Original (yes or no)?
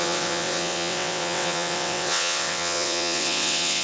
no